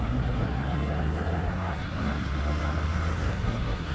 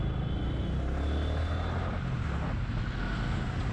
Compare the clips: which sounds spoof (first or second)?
first